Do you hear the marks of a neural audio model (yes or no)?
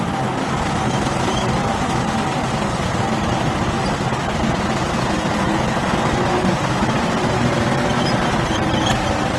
no